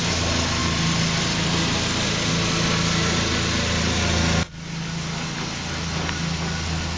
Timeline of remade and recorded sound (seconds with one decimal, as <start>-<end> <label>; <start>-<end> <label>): 0.0-7.0 recorded